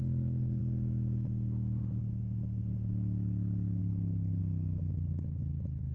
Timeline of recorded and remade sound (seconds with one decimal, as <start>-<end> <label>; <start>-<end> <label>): 0.0-0.6 remade; 0.6-3.8 recorded; 3.8-4.4 remade; 4.4-4.9 recorded; 4.9-5.9 remade